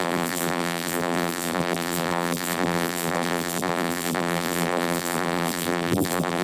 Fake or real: fake